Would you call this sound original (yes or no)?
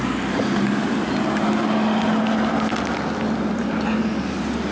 yes